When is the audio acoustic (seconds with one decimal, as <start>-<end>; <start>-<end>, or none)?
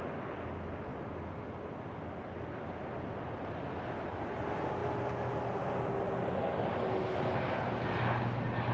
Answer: 0.0-8.7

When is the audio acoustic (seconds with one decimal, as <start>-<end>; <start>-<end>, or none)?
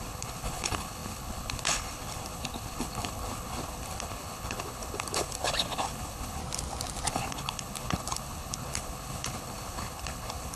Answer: 6.4-7.1